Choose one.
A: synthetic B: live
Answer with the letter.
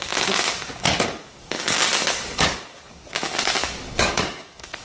A